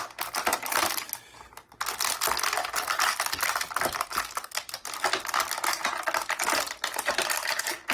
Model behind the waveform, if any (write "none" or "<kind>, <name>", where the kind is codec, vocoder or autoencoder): none